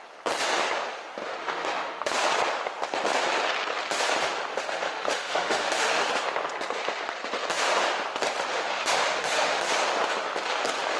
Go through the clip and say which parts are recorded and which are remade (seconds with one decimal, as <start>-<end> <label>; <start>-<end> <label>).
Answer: 0.0-1.4 recorded; 1.4-2.1 remade; 2.1-4.5 recorded; 4.5-6.1 remade; 6.1-8.5 recorded; 8.5-9.6 remade; 9.6-11.0 recorded